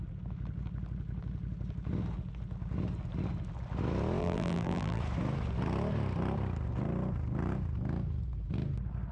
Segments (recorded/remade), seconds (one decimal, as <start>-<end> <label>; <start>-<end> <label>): 0.0-4.2 recorded; 4.2-5.0 remade; 5.0-9.1 recorded